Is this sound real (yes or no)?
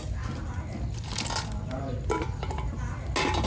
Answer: yes